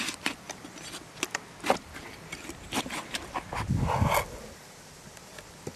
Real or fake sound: real